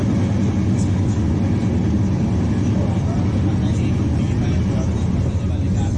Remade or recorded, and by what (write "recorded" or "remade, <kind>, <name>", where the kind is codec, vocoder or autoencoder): recorded